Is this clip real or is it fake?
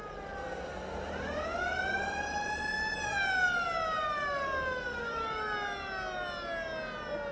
real